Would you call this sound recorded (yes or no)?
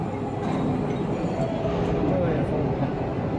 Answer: yes